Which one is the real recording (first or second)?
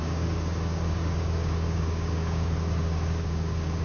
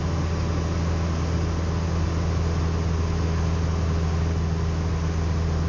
second